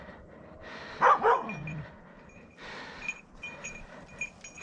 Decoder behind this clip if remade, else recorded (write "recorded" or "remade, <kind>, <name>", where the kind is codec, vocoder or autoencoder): recorded